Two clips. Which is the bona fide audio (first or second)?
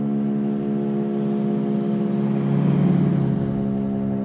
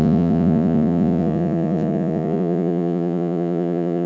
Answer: first